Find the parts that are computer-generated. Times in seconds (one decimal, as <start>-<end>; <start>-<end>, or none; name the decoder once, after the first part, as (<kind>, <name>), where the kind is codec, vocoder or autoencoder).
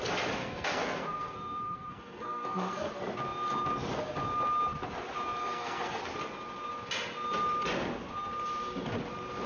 0.4-2.9 (codec, SNAC); 5.4-6.0